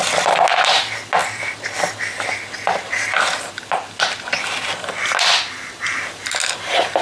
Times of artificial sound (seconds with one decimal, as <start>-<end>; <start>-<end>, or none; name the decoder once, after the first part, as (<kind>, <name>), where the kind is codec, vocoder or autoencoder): none